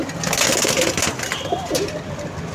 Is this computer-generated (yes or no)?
no